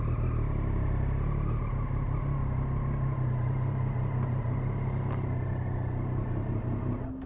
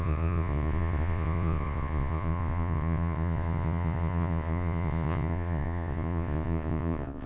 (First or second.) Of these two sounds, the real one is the first